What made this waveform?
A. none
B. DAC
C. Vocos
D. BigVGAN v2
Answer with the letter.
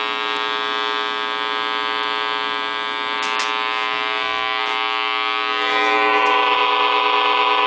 A